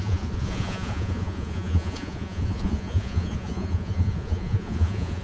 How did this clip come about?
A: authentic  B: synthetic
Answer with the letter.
B